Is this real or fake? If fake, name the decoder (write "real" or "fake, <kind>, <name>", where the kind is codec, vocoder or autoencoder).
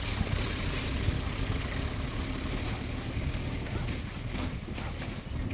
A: real